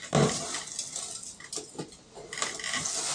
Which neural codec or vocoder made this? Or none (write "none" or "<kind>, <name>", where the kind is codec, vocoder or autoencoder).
none